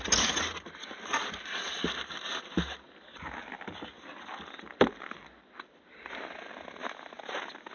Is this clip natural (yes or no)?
yes